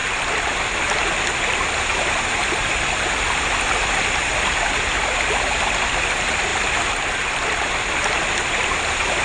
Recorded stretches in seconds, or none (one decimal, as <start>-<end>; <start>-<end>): 0.0-9.2